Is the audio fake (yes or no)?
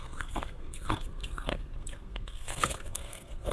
yes